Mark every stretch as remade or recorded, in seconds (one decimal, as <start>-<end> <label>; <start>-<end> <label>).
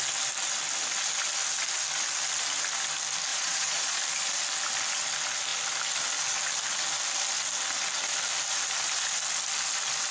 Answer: 0.0-3.3 recorded; 3.3-4.0 remade; 4.0-10.1 recorded